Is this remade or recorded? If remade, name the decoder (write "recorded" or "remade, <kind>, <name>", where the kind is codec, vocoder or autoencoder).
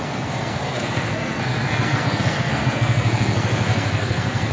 remade, codec, SNAC